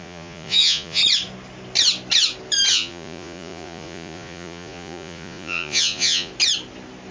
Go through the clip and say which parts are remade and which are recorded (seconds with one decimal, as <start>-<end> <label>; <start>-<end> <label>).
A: 0.0-1.0 remade; 1.0-2.7 recorded; 2.7-6.3 remade; 6.3-7.1 recorded